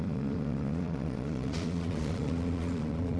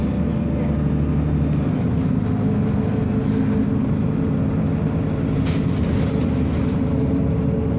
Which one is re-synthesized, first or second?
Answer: first